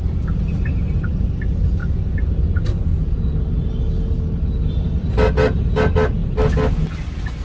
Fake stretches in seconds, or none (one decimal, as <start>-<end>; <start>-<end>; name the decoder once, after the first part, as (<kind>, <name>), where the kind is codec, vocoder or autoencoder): none